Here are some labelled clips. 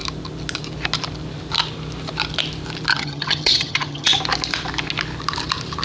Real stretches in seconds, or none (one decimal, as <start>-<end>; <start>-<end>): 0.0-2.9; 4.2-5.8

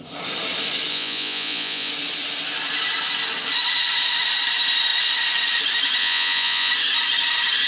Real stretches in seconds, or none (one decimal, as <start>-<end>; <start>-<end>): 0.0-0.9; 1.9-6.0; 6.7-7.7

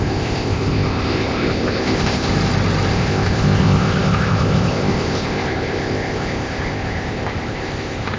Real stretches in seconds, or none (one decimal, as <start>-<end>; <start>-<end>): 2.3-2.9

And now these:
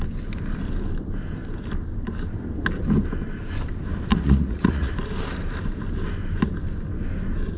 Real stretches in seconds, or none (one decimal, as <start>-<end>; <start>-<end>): 0.0-4.1; 4.9-7.6

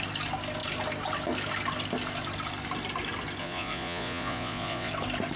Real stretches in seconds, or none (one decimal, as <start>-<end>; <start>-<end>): 0.0-3.4; 4.9-5.4

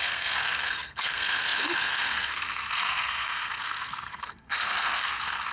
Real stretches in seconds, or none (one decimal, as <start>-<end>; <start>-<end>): none